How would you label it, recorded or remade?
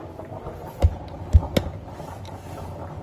recorded